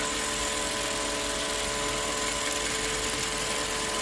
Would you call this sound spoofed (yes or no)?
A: no